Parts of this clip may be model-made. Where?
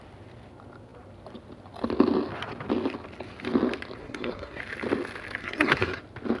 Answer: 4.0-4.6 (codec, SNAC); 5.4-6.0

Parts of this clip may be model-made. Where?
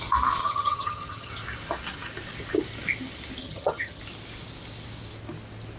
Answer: 0.4-1.3 (vocoder, HiFi-GAN); 3.4-4.0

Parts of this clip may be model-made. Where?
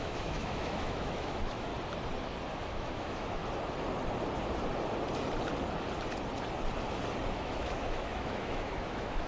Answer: 0.0-1.7 (autoencoder, DAC-VAE); 2.5-3.4; 7.3-9.3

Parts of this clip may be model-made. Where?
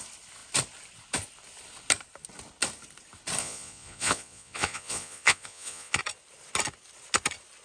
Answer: 3.4-6.0 (vocoder, Vocos)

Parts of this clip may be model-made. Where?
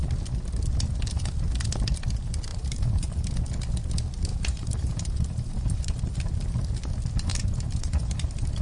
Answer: 2.5-3.3 (vocoder, BigVGAN v2); 4.3-6.1; 7.3-8.6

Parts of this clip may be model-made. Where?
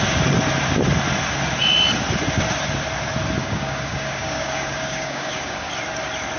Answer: 3.4-5.7 (codec, DAC)